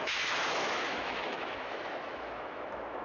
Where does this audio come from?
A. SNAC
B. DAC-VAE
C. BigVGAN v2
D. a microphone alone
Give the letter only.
B